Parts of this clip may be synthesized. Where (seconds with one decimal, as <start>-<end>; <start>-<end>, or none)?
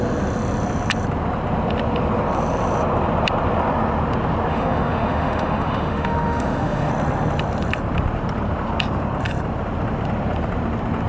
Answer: 4.5-6.9